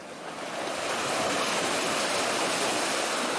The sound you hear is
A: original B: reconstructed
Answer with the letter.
A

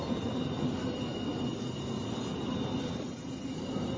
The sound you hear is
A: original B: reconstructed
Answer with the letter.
A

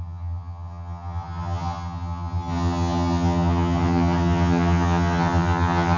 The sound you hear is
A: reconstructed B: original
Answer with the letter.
A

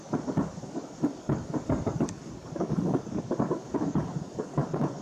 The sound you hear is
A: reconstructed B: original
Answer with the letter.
A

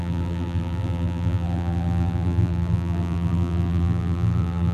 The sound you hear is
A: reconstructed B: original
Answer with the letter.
A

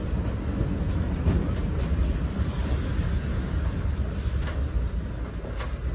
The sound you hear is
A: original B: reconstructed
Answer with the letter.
A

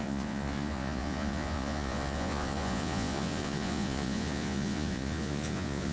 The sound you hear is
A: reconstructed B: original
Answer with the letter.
A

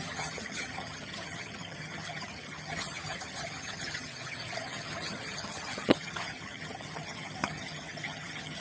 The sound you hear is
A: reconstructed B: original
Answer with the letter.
A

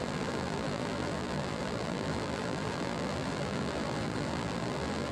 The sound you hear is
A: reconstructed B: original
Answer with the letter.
A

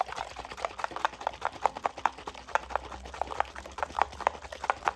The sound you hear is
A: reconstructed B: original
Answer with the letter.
B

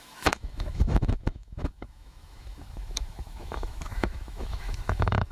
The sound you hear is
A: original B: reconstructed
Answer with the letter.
B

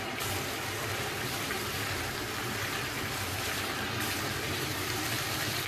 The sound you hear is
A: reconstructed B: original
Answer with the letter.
A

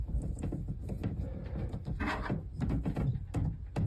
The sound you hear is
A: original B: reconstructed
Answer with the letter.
A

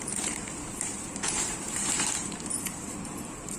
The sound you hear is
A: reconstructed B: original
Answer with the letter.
A